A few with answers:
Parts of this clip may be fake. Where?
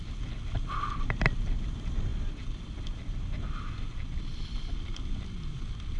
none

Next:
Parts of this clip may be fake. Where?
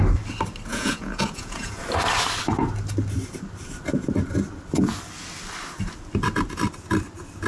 0.7-1.8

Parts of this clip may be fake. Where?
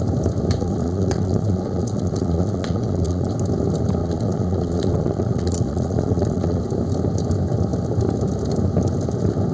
0.6-3.3; 4.0-6.6